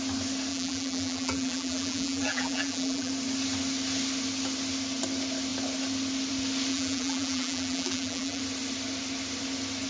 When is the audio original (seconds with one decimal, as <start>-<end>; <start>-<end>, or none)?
0.0-0.5; 3.1-6.7; 8.4-9.9